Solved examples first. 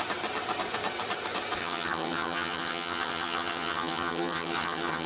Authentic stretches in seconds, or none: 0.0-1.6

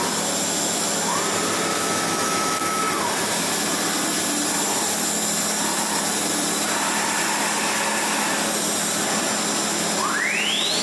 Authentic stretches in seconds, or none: 0.0-1.7; 2.8-10.8

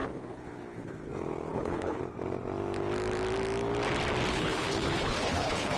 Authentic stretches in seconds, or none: 1.1-1.5; 2.0-4.3

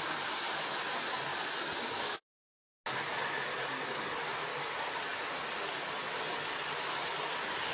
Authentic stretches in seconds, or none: 0.0-7.7